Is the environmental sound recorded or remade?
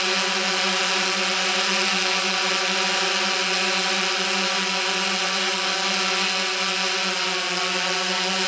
recorded